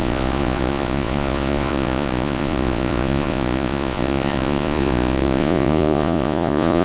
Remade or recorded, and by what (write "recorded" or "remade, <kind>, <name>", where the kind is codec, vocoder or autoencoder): remade, vocoder, Vocos